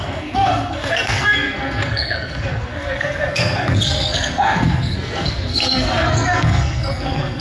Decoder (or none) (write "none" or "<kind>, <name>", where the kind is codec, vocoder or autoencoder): codec, SNAC